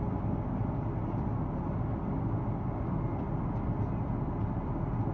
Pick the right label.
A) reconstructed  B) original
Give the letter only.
B